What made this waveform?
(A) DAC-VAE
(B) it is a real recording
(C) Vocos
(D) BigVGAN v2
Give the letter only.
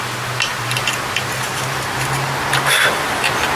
B